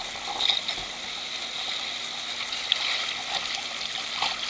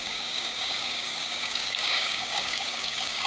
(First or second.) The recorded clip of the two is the first